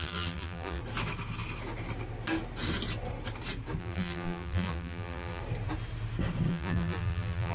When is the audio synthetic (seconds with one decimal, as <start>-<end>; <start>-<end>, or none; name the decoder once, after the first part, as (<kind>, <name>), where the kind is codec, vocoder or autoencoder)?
0.0-0.8 (vocoder, BigVGAN v2); 3.8-5.4; 6.5-7.5